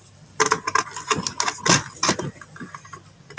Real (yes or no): yes